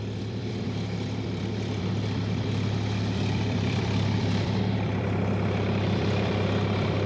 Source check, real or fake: fake